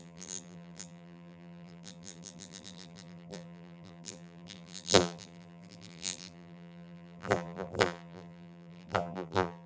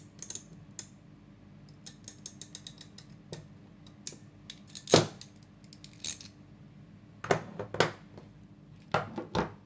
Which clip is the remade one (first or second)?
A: first